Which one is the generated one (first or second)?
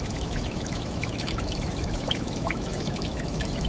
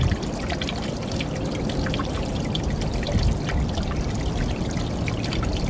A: first